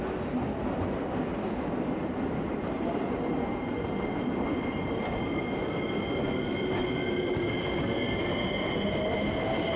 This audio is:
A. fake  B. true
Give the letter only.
B